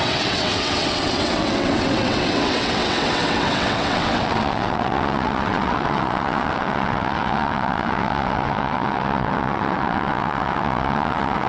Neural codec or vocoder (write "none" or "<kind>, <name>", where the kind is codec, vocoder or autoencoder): vocoder, WaveNeXt